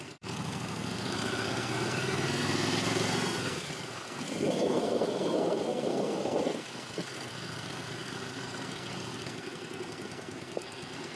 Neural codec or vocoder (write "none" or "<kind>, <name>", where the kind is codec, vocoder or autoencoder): codec, SNAC